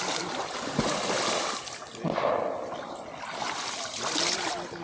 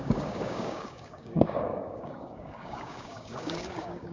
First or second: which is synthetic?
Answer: second